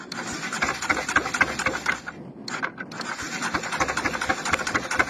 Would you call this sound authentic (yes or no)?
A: yes